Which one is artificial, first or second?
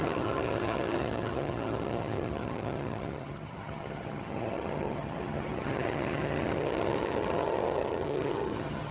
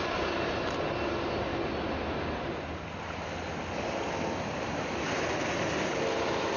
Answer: first